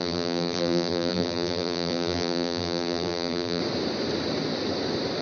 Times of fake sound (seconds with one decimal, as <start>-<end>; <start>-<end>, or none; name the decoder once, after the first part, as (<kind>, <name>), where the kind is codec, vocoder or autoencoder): 0.0-3.6 (vocoder, BigVGAN v2)